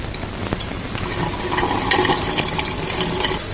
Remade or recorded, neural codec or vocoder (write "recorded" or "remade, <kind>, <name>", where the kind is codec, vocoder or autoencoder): recorded